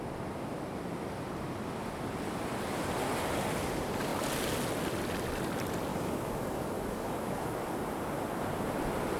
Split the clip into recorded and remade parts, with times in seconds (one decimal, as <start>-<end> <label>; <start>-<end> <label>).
0.0-5.9 recorded; 5.9-7.7 remade; 7.7-9.2 recorded